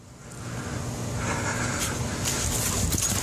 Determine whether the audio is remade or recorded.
recorded